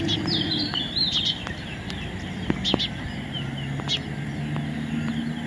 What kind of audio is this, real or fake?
real